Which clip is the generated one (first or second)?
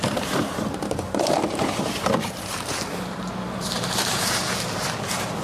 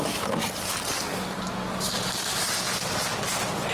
first